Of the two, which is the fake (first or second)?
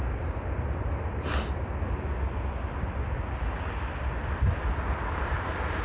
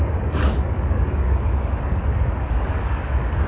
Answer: second